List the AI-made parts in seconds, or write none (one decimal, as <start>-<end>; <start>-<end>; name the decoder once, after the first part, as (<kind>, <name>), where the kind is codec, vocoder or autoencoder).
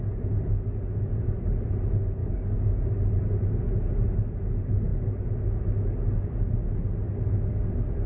2.2-2.9 (codec, DAC)